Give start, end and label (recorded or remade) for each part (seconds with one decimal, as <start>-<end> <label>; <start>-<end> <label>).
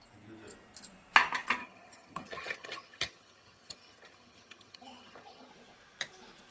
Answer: 0.0-1.6 recorded; 1.6-5.5 remade; 5.5-6.5 recorded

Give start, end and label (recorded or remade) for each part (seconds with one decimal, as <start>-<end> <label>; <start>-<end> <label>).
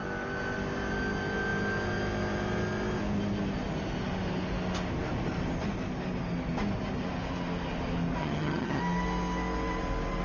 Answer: 0.0-8.2 recorded; 8.2-8.8 remade; 8.8-10.2 recorded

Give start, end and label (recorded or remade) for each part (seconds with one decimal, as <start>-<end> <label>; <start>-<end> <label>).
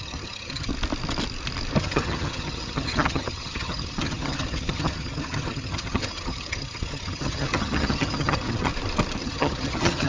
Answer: 0.0-0.7 remade; 0.7-1.8 recorded; 1.8-8.7 remade; 8.7-9.2 recorded; 9.2-10.1 remade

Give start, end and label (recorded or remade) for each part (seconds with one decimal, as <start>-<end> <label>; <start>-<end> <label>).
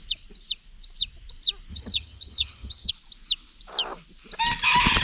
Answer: 0.0-1.7 recorded; 1.7-2.9 remade; 2.9-5.0 recorded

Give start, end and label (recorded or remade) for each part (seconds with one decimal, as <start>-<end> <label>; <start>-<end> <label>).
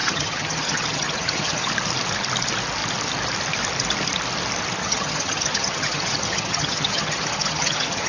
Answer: 0.0-1.7 remade; 1.7-4.8 recorded; 4.8-8.1 remade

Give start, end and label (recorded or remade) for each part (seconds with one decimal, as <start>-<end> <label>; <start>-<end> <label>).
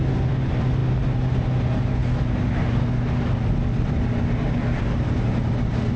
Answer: 0.0-6.0 recorded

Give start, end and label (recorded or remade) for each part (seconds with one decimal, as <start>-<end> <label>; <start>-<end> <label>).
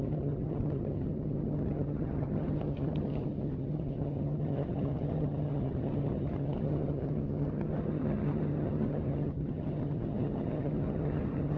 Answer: 0.0-11.6 remade